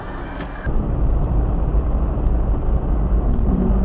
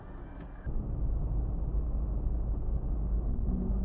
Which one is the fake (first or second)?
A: first